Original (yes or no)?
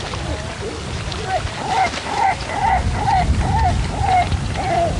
yes